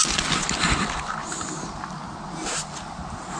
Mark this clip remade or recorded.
recorded